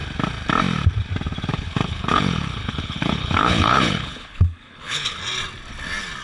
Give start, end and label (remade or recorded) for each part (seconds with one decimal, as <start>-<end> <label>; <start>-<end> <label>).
0.0-1.5 recorded; 1.5-5.2 remade; 5.2-6.2 recorded